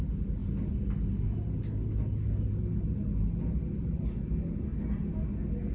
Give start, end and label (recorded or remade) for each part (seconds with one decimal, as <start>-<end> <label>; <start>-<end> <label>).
0.0-5.7 recorded